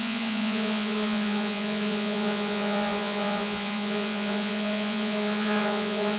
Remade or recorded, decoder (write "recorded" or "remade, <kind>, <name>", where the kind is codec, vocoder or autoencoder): remade, vocoder, Vocos